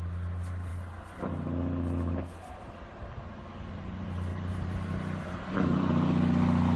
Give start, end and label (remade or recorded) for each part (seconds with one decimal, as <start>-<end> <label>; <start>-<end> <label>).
0.0-2.4 recorded; 2.4-3.4 remade; 3.4-4.3 recorded; 4.3-4.9 remade; 4.9-6.8 recorded